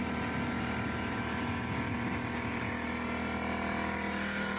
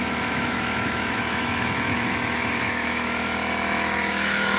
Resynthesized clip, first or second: second